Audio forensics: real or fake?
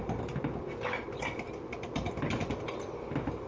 real